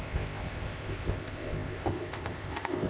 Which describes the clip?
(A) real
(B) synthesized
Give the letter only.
B